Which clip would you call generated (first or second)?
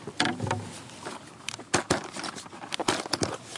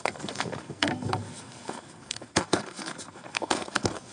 second